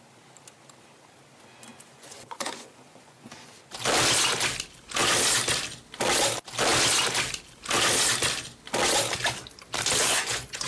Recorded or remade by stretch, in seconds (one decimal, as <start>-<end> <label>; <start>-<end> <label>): 0.0-1.7 recorded; 1.7-3.5 remade; 3.5-10.0 recorded; 10.0-10.7 remade